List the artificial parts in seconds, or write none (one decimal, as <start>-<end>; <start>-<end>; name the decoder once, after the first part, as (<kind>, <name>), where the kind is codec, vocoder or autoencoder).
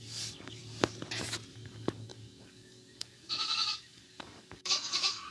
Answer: 0.0-0.6 (codec, DAC); 1.5-5.3